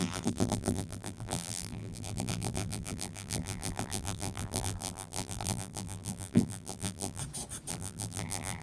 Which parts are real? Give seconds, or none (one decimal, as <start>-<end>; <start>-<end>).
7.2-7.7